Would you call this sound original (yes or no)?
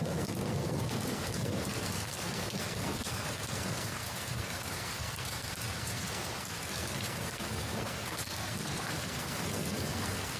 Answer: no